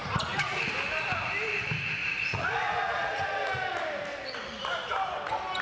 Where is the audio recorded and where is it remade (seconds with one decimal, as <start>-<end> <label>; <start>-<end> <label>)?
0.0-0.6 remade; 0.6-2.0 recorded; 2.0-3.3 remade; 3.3-5.6 recorded